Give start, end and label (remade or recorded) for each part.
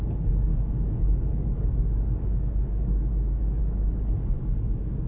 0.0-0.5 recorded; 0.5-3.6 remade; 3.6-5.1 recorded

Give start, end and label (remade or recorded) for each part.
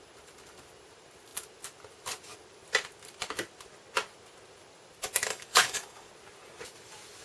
0.0-5.3 recorded; 5.3-6.1 remade; 6.1-7.2 recorded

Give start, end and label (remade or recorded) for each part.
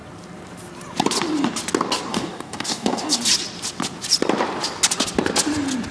0.0-2.1 recorded; 2.1-3.2 remade; 3.2-5.9 recorded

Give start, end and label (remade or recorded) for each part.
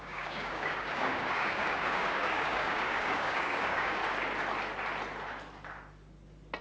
0.0-4.0 remade; 4.0-6.6 recorded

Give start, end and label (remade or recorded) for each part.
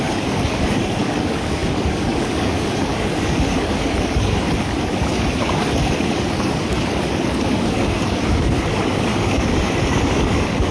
0.0-10.7 remade